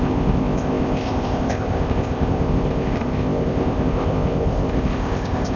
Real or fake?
fake